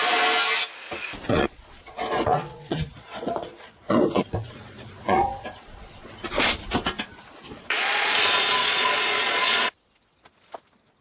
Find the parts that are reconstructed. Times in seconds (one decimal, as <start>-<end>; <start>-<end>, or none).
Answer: 1.3-6.5; 7.5-8.2; 8.6-9.7